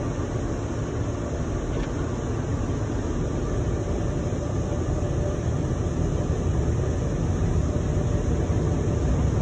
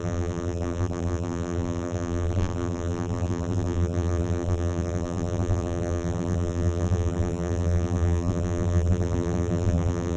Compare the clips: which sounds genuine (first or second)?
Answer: first